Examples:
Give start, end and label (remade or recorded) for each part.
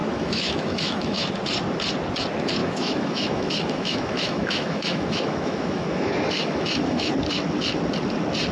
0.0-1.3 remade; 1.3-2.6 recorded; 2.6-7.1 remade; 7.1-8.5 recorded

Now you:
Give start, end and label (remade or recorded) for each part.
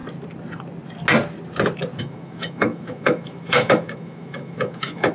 0.0-2.0 recorded; 2.0-5.1 remade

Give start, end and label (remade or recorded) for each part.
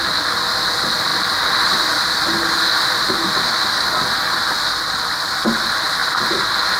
0.0-6.8 recorded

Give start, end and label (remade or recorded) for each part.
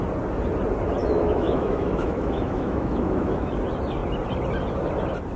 0.0-1.0 recorded; 1.0-3.5 remade; 3.5-5.4 recorded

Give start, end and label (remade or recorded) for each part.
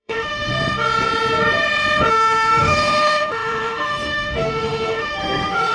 0.0-0.5 remade; 0.5-2.1 recorded; 2.1-5.7 remade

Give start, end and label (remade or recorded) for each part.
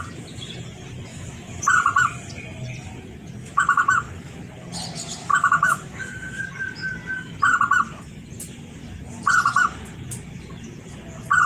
0.0-1.1 recorded; 1.1-1.6 remade; 1.6-3.4 recorded; 3.4-4.4 remade; 4.4-5.3 recorded; 5.3-6.4 remade; 6.4-11.5 recorded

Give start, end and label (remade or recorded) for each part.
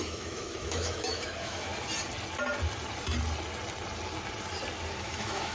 0.0-1.7 remade; 1.7-5.0 recorded; 5.0-5.5 remade